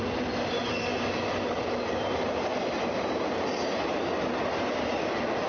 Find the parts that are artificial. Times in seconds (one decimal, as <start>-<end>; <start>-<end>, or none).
none

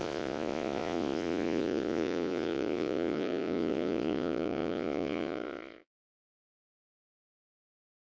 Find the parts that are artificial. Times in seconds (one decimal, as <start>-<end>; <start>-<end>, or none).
0.0-8.1

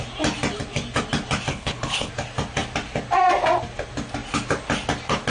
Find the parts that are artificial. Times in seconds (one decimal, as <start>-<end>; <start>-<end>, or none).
1.5-2.1

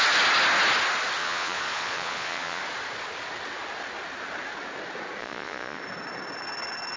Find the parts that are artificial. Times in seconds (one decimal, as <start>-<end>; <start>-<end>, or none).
1.2-2.6; 5.2-5.8